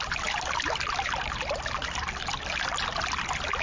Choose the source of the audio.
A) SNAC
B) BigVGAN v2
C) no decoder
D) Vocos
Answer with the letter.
C